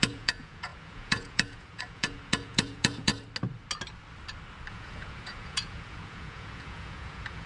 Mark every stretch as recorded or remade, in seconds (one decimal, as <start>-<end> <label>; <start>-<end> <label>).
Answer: 0.0-3.1 remade; 3.1-4.7 recorded; 4.7-7.5 remade